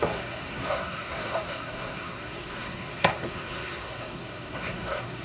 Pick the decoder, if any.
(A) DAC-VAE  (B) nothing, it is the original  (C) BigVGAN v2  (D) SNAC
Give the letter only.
D